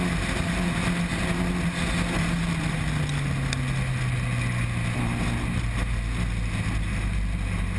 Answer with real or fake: real